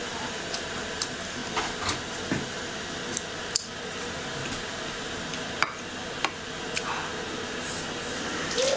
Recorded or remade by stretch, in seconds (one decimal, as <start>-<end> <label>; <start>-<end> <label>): 0.0-8.8 recorded